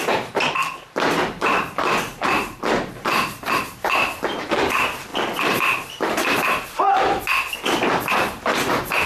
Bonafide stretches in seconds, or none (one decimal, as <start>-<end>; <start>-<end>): 0.0-9.1